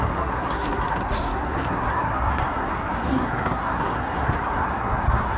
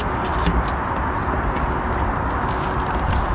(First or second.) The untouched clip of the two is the second